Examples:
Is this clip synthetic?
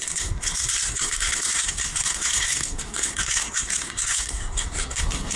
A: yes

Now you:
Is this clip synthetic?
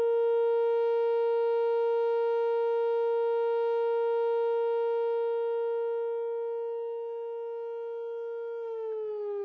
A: no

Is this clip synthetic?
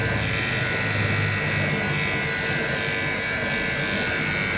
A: no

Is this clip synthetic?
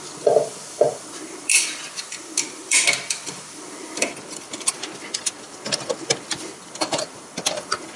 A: yes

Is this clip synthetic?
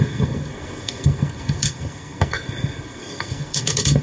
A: yes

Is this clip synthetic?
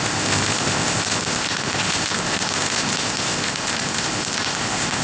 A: yes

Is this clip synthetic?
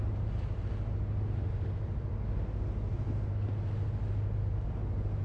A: no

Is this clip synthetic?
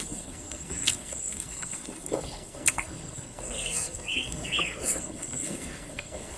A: yes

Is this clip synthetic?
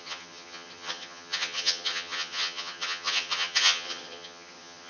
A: yes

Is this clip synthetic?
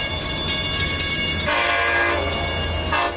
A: no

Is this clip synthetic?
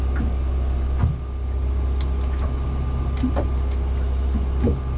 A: no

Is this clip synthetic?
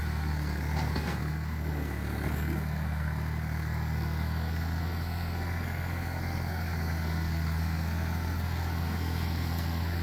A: yes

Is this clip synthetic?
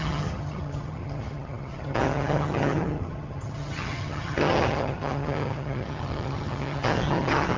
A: yes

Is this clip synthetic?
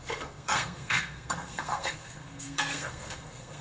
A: yes